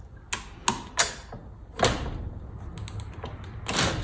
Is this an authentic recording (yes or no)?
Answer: yes